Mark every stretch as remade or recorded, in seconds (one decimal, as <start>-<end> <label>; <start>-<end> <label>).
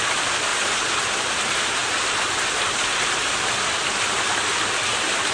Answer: 0.0-5.3 recorded